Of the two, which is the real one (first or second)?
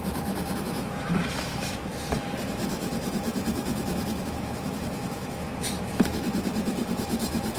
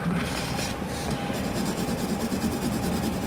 second